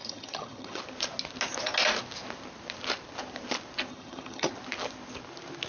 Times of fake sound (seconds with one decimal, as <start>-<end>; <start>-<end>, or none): 0.0-0.8; 3.9-4.5